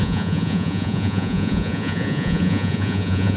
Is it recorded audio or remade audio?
remade